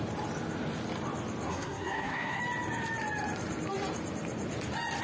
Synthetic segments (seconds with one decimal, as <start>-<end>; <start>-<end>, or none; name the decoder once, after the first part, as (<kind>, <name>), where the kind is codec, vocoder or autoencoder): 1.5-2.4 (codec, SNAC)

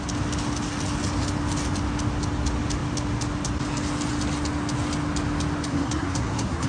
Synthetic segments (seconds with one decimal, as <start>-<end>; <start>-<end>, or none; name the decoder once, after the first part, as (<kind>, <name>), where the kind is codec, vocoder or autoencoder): 5.7-6.7 (codec, SNAC)

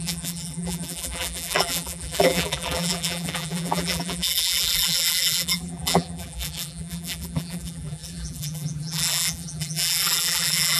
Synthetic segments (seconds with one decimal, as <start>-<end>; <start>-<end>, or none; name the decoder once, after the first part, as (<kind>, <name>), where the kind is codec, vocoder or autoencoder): 0.0-10.8 (vocoder, BigVGAN v2)

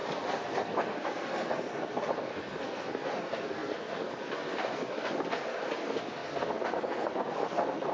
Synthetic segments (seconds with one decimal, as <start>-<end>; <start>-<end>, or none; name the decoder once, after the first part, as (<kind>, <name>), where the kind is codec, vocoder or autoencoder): 0.0-7.9 (codec, SNAC)